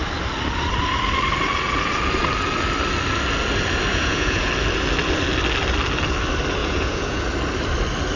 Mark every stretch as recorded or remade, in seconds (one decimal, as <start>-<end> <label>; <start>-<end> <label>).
0.0-3.9 recorded; 3.9-4.5 remade; 4.5-6.6 recorded; 6.6-7.2 remade; 7.2-8.2 recorded